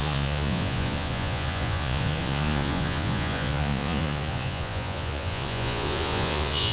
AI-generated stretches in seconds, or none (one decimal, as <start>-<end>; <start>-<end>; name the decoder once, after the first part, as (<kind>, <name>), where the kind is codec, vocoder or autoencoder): 0.0-6.7 (vocoder, Vocos)